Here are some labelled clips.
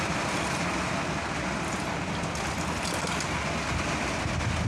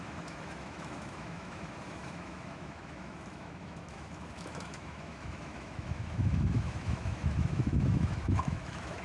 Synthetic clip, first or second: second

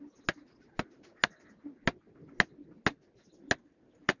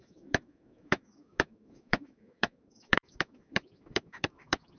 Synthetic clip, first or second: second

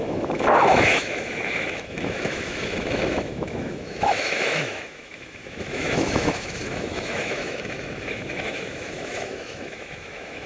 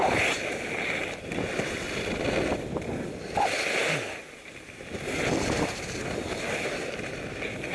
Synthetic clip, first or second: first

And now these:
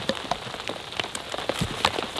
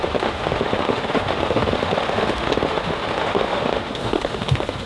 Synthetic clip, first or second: second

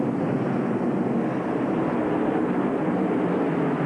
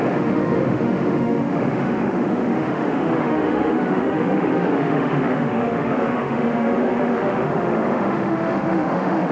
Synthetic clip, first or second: second